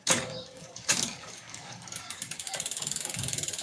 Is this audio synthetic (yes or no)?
yes